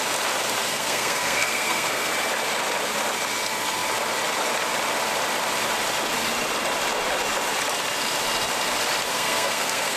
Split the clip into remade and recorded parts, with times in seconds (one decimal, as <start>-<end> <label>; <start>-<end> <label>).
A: 0.0-0.6 recorded; 0.6-2.1 remade; 2.1-9.1 recorded; 9.1-10.0 remade